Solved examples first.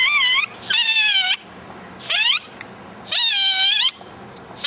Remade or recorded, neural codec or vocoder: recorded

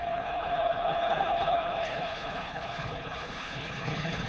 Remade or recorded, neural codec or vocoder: remade, codec, HILCodec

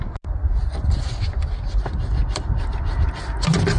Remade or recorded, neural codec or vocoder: recorded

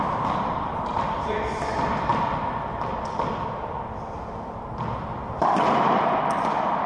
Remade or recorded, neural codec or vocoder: recorded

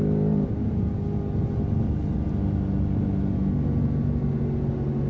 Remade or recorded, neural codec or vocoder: recorded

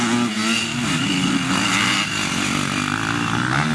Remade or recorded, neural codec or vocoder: recorded